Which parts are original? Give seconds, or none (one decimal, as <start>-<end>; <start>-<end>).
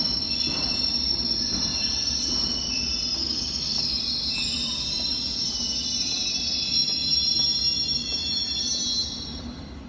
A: 0.0-3.2; 4.0-9.9